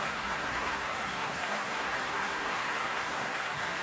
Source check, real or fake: fake